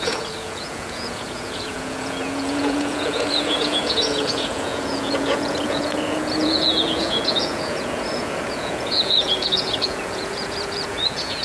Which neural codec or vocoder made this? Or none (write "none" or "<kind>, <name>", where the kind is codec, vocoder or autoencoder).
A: vocoder, Vocos